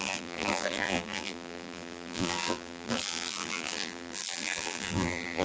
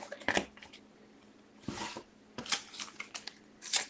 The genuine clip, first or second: second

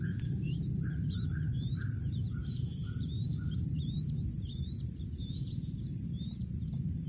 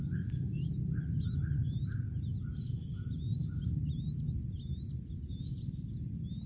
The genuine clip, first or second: second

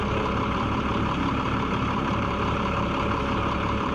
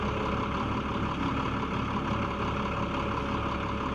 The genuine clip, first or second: second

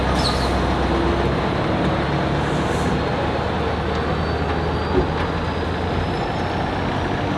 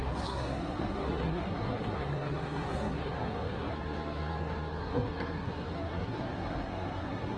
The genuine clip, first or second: first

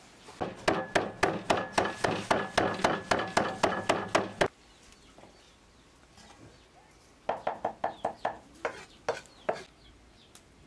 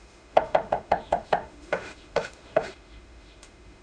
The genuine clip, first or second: first